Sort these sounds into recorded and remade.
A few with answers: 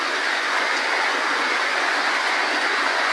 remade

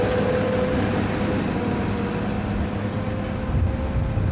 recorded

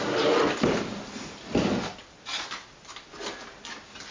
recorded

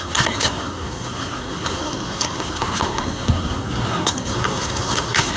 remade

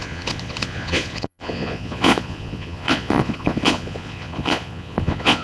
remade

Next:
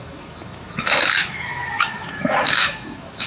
remade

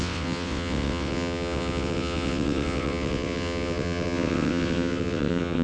remade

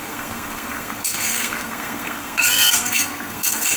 remade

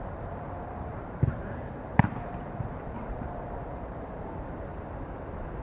remade